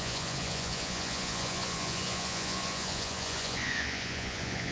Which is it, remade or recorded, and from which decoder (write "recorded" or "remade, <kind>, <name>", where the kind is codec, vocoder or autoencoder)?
remade, vocoder, Vocos